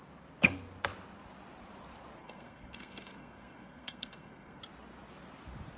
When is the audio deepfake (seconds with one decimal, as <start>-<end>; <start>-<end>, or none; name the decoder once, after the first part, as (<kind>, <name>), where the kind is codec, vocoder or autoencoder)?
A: 2.2-4.6 (codec, SNAC)